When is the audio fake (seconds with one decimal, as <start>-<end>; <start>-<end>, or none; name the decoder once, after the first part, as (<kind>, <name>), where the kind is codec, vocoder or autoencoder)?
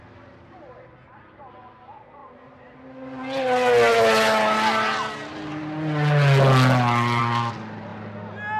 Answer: none